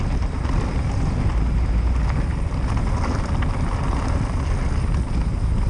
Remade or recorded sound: recorded